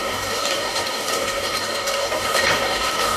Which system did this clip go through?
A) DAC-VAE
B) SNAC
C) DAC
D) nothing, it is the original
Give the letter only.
C